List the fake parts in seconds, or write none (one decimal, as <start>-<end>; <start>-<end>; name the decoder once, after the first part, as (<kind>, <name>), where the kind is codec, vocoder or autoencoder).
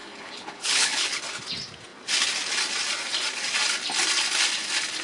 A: 0.0-1.2 (codec, HILCodec)